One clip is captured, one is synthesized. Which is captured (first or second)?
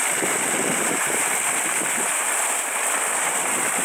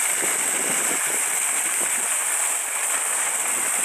second